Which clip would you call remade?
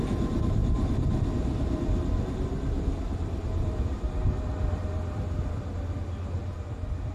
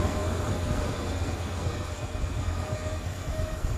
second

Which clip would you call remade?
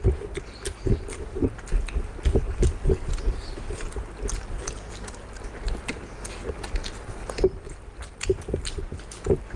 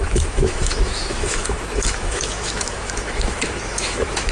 second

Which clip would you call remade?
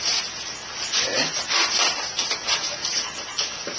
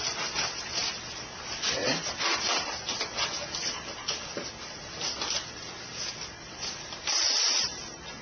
second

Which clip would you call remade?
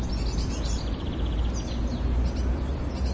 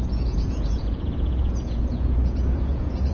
second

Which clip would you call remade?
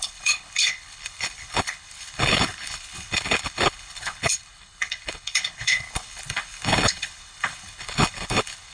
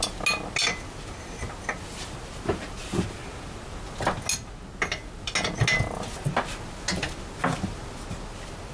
first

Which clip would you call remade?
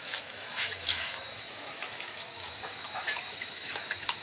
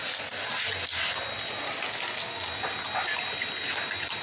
first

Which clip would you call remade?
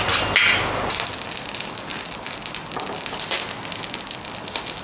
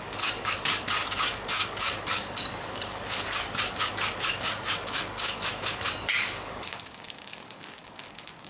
second